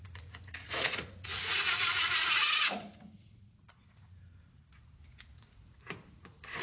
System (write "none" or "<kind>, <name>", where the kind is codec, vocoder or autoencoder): vocoder, Vocos